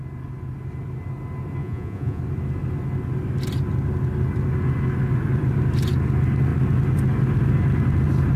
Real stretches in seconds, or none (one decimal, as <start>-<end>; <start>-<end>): 0.0-1.6; 2.2-8.4